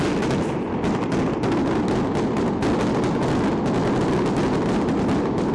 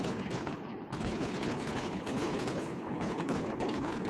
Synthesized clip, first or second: second